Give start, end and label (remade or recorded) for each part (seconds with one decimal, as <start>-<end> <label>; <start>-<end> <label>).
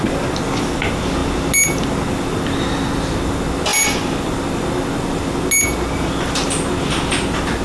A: 0.0-7.6 recorded